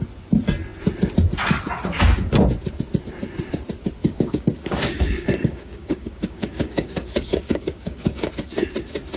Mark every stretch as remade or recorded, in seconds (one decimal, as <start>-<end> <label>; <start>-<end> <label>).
0.0-4.0 recorded; 4.0-8.3 remade; 8.3-9.2 recorded